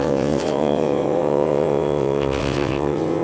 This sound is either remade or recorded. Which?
remade